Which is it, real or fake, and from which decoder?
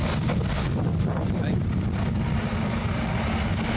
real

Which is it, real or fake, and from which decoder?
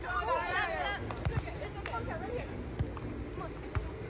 real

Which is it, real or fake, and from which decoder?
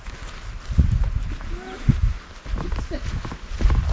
real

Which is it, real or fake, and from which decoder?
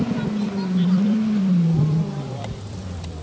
fake, vocoder, BigVGAN v2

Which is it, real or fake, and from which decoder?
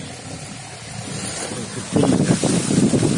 real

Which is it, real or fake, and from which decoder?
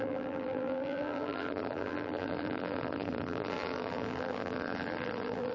fake, vocoder, BigVGAN v2